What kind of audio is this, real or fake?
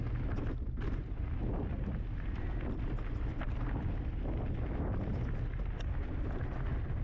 real